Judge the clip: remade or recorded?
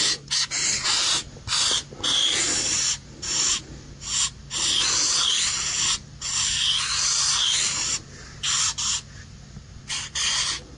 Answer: recorded